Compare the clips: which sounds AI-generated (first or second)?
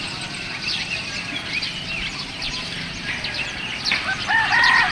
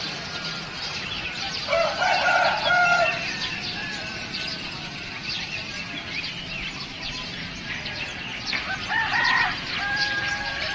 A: second